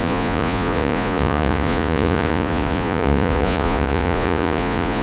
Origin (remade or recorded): remade